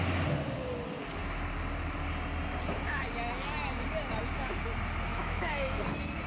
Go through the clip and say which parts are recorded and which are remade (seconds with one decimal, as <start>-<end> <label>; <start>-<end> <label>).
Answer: 0.0-5.1 recorded; 5.1-5.8 remade; 5.8-6.3 recorded